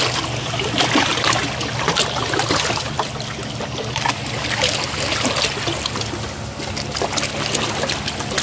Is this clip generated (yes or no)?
no